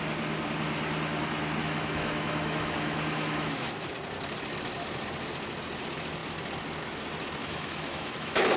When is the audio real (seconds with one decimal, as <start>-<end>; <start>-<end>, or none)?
0.0-1.6; 3.9-7.4